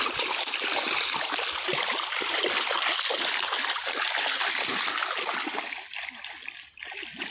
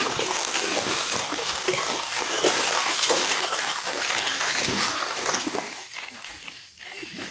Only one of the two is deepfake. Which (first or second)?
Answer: second